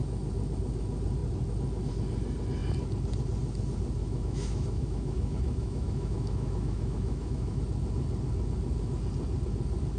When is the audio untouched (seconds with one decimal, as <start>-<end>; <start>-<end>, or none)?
0.0-4.0; 7.6-10.0

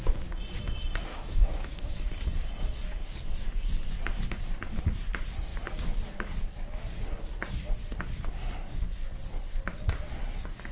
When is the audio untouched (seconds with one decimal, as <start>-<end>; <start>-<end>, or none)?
0.0-1.1; 2.1-10.7

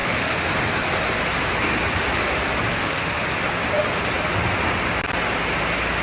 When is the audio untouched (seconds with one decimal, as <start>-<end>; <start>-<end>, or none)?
0.5-2.7; 3.2-6.0

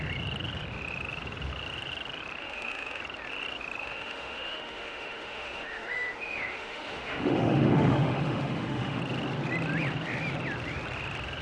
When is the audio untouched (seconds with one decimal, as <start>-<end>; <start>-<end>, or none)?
0.0-2.4; 3.0-3.8; 9.0-11.4

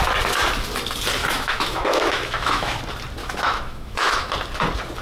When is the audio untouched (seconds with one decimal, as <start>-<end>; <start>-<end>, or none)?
0.0-1.2; 2.8-3.2; 4.3-5.0

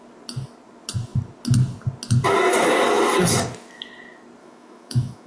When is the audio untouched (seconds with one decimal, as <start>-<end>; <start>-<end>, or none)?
0.0-4.4

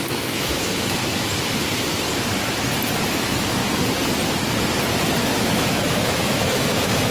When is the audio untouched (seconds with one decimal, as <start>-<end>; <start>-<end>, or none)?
1.0-3.1; 3.6-5.4